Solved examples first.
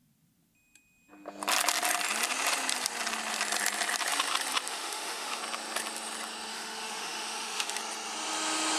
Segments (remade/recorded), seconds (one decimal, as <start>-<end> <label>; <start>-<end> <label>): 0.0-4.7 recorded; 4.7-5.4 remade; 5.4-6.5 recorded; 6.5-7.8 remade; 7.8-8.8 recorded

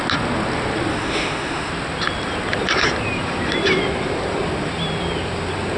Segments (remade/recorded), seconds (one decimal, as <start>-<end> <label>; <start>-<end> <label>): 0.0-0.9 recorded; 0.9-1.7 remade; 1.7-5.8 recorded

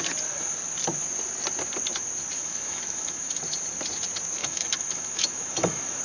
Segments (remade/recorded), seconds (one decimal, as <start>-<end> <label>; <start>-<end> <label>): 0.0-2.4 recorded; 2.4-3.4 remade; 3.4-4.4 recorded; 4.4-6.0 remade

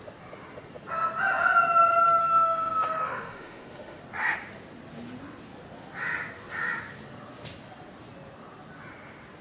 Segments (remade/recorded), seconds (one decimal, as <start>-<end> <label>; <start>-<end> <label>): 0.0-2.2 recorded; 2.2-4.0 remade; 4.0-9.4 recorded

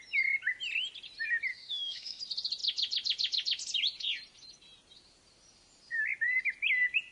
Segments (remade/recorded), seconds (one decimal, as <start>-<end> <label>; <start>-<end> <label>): 0.0-1.5 recorded; 1.5-2.2 remade; 2.2-7.1 recorded